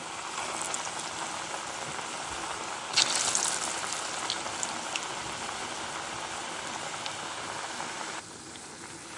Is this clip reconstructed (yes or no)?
no